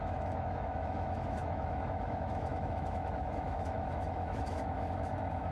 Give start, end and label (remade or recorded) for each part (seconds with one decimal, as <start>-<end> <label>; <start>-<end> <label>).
0.0-5.5 remade